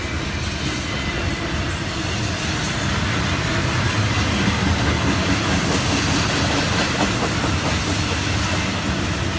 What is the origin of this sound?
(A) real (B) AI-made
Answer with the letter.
A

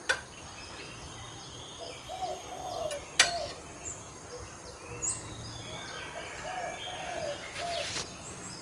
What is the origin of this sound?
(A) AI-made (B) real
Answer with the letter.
B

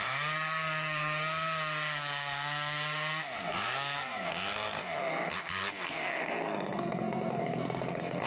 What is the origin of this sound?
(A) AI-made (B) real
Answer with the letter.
A